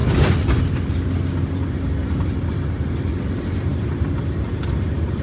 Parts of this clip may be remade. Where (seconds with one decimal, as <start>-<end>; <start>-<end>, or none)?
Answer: none